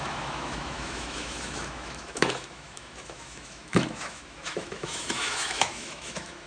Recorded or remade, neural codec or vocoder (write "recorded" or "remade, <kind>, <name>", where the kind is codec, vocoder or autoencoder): remade, autoencoder, DAC-VAE